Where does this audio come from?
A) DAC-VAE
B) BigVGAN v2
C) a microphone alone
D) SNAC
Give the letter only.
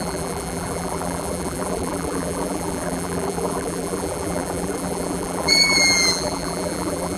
B